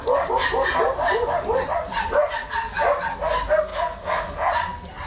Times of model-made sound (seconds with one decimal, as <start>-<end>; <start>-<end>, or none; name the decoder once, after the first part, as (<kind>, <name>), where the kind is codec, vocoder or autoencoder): none